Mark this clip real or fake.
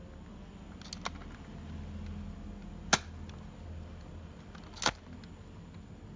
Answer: real